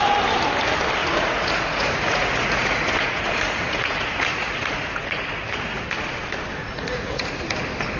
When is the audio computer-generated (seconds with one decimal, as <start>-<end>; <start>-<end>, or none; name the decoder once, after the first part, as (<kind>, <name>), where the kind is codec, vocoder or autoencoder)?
1.0-5.8 (vocoder, Vocos); 6.6-7.4